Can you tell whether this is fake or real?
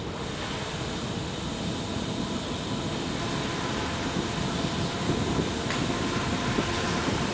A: real